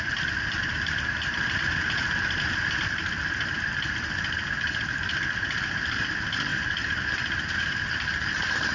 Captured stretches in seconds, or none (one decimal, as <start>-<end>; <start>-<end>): 0.0-8.7